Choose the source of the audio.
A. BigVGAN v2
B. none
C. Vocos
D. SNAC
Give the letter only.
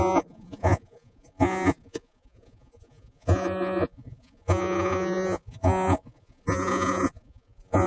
C